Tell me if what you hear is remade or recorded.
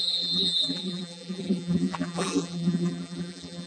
remade